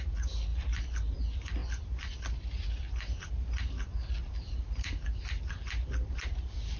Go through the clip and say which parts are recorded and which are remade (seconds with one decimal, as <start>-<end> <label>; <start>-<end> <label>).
0.0-6.8 recorded